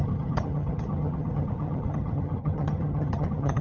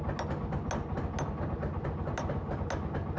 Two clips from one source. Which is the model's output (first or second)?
first